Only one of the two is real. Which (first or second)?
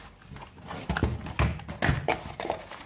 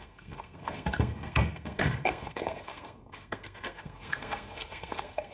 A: first